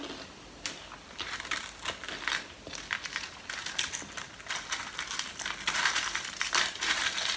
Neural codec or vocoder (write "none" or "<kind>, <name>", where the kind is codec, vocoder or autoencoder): none